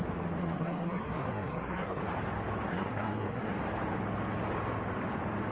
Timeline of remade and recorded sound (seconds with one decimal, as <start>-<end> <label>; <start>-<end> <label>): 0.0-0.4 recorded; 0.4-2.0 remade; 2.0-2.7 recorded; 2.7-3.5 remade; 3.5-5.5 recorded